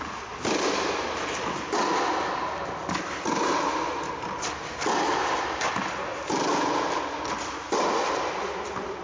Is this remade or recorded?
recorded